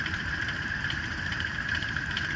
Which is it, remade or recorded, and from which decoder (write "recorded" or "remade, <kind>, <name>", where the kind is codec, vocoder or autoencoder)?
remade, vocoder, BigVGAN v2